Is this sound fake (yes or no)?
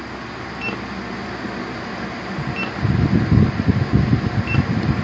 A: no